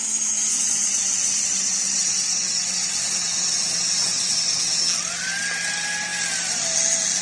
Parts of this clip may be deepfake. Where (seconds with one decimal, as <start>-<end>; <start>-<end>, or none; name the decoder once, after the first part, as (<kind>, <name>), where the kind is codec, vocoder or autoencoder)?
0.5-4.8 (vocoder, WaveNeXt)

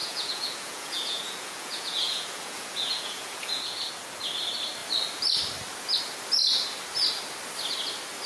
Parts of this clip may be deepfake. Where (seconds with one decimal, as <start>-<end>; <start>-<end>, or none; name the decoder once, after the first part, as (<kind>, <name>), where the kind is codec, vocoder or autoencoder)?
0.0-3.9 (vocoder, Vocos)

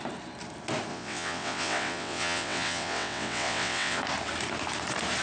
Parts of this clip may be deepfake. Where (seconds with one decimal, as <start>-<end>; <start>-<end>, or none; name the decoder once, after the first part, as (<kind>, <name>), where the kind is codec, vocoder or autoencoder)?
0.9-4.0 (vocoder, WaveNeXt)

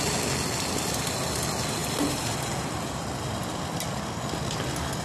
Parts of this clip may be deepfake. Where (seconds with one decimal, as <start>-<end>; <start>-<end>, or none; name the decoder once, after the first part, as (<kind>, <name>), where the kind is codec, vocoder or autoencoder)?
1.8-4.0 (vocoder, BigVGAN v2)

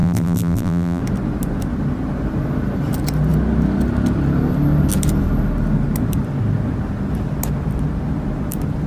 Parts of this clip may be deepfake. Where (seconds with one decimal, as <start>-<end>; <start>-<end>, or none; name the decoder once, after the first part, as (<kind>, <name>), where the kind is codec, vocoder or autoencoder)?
0.0-1.0 (vocoder, BigVGAN v2)

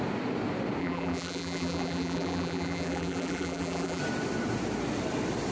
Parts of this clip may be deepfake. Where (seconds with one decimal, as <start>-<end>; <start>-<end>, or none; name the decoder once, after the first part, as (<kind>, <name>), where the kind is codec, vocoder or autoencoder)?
0.8-4.0 (vocoder, BigVGAN v2)